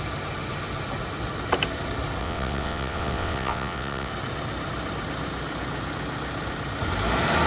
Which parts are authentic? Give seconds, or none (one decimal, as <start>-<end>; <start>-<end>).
0.0-2.2; 4.1-7.5